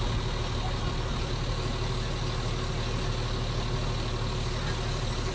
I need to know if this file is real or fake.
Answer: real